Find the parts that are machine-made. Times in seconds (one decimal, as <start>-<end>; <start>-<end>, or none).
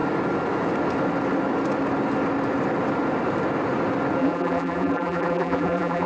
4.2-6.1